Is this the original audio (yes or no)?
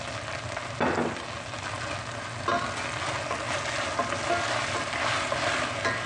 yes